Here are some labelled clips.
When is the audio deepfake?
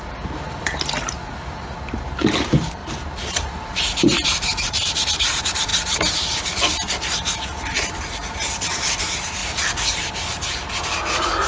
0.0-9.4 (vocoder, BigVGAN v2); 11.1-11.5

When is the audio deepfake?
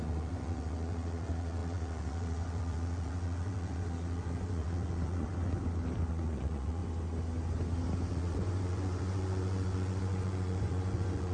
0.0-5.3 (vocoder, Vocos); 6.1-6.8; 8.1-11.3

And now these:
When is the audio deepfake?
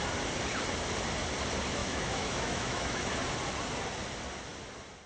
1.8-3.1 (autoencoder, DAC-VAE)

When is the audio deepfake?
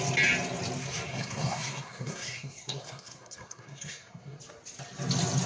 1.1-4.4 (codec, SNAC)